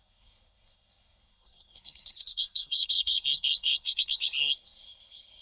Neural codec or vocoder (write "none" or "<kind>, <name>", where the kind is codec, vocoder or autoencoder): codec, SNAC